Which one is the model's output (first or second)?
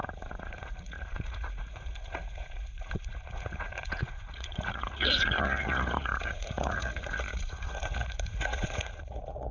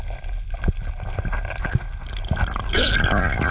first